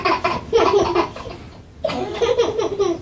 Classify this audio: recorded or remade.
recorded